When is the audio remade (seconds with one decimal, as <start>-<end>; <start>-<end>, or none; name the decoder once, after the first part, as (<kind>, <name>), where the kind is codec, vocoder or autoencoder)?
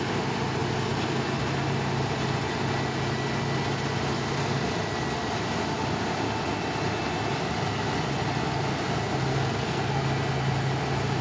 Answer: 9.3-10.0 (codec, SNAC)